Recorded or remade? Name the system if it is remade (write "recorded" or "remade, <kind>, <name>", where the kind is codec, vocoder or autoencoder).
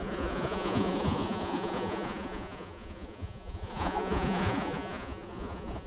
remade, vocoder, Vocos